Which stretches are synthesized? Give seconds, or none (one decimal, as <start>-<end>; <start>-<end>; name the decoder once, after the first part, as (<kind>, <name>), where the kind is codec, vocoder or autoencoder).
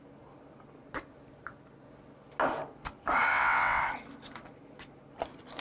3.3-3.8 (vocoder, WaveNeXt)